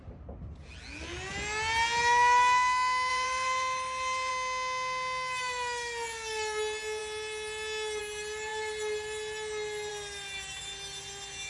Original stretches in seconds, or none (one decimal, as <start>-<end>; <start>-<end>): 0.0-3.1; 4.3-11.5